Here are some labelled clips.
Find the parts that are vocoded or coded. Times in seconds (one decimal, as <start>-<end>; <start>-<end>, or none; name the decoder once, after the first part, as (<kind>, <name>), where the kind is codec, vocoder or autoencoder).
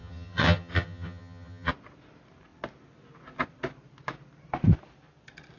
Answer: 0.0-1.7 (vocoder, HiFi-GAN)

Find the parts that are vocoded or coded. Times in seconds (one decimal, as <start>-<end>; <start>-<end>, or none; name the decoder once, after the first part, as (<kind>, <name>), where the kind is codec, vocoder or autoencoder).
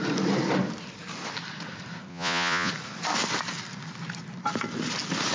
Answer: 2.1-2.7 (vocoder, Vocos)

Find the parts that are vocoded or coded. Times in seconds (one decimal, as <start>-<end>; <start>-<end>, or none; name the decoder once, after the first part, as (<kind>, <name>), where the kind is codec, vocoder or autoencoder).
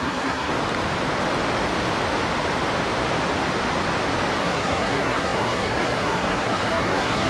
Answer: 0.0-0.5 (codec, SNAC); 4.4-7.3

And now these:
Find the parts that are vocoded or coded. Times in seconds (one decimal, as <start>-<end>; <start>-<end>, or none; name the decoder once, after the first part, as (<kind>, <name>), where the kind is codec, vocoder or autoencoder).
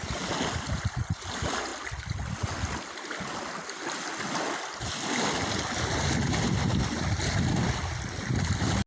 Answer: none